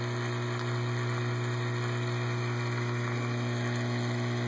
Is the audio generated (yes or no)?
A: no